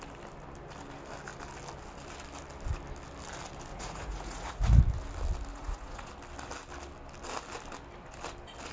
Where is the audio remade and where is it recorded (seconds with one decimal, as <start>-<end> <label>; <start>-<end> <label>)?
0.0-3.7 recorded; 3.7-4.8 remade; 4.8-5.5 recorded; 5.5-6.1 remade; 6.1-8.7 recorded